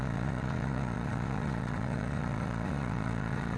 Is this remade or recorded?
remade